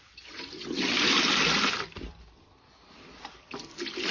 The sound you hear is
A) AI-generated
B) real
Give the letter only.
A